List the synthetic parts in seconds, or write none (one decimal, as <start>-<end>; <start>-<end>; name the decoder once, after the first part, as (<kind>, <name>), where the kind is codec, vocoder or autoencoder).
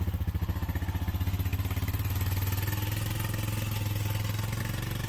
none